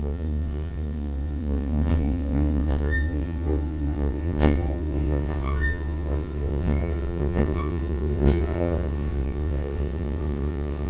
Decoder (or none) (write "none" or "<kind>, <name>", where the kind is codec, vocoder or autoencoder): vocoder, WaveNeXt